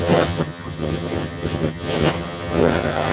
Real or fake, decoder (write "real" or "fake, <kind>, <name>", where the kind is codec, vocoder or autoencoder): fake, vocoder, HiFi-GAN